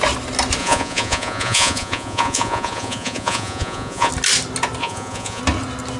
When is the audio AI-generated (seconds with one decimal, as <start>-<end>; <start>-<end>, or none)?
0.6-4.1; 4.8-5.4